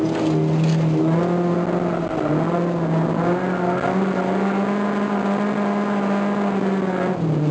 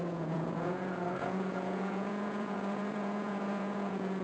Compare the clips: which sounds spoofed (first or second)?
second